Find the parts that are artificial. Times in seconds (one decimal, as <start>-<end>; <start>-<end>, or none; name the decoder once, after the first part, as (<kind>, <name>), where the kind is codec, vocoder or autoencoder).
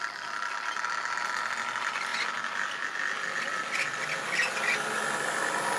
none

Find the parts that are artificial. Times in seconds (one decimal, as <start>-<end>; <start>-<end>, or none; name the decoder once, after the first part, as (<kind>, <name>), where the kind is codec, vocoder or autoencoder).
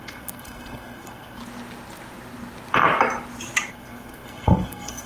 0.0-1.4 (codec, SNAC); 3.7-5.1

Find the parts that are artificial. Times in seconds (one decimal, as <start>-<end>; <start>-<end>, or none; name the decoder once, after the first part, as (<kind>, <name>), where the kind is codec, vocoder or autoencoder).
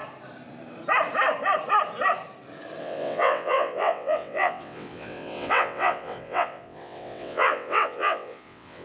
2.8-8.8 (vocoder, WaveNeXt)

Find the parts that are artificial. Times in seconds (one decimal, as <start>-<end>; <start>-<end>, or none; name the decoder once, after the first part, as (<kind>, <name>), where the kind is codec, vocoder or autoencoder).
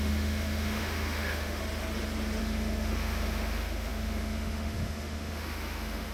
0.0-1.6 (autoencoder, DAC-VAE); 2.4-6.1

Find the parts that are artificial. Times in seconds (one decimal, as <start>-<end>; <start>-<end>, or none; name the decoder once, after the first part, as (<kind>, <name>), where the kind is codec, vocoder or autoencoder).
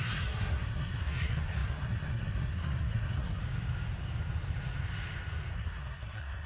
0.0-3.4 (codec, SNAC); 5.5-6.5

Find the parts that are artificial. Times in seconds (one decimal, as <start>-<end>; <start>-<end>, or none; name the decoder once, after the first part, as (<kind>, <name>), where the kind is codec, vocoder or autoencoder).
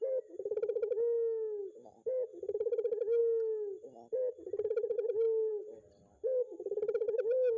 none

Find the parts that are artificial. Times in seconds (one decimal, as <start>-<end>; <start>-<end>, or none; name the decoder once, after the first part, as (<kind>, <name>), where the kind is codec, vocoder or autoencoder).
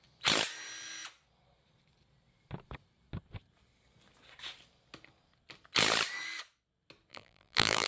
7.1-7.9 (vocoder, BigVGAN v2)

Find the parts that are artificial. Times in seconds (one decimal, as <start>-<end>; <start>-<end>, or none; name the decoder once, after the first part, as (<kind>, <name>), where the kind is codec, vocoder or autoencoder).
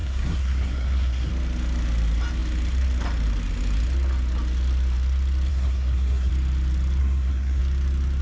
0.0-1.3 (codec, SNAC); 5.5-6.3; 7.0-7.6